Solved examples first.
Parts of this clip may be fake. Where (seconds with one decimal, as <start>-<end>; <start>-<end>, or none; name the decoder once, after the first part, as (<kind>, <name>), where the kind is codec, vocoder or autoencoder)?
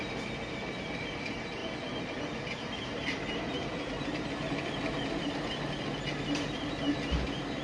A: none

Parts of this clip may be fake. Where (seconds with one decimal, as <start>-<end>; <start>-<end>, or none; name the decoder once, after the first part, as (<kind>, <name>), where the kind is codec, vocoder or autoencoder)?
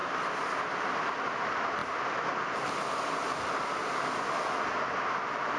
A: none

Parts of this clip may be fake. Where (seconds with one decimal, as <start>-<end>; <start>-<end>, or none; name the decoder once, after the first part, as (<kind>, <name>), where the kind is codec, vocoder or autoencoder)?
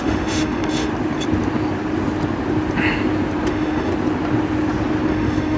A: 0.0-0.9 (autoencoder, DAC-VAE); 3.5-3.9; 5.1-5.6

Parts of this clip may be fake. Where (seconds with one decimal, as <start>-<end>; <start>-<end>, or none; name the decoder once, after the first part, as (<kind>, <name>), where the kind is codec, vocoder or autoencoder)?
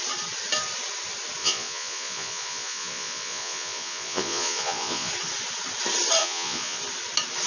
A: 1.4-5.1 (vocoder, Vocos); 6.2-6.8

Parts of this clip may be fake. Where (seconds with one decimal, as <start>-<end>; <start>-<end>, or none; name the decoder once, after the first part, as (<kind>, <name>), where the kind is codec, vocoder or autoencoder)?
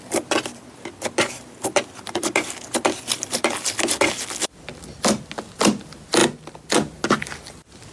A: none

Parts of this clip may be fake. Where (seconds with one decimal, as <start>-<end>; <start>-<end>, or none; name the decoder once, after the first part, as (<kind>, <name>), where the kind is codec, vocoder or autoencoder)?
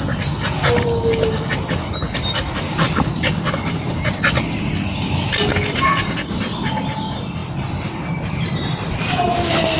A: none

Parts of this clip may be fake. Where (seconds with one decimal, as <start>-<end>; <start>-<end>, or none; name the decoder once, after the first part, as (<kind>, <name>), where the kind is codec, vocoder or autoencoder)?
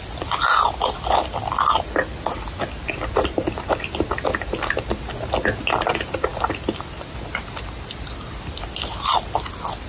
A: none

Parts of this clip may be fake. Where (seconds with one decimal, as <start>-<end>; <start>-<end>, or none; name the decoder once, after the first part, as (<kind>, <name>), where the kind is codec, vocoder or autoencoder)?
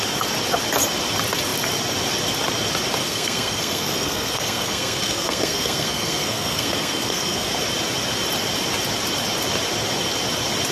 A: 3.0-7.5 (codec, SNAC)